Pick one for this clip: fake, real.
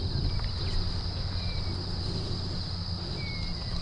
real